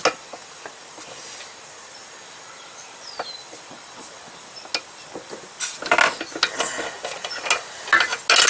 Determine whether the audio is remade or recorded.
recorded